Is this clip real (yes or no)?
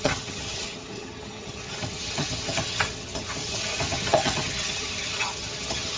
no